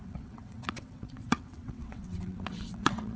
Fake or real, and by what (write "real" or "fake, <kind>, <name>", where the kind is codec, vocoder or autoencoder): fake, vocoder, WaveNeXt